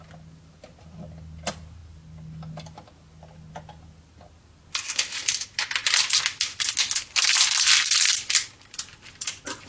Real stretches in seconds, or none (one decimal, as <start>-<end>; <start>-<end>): 0.0-9.7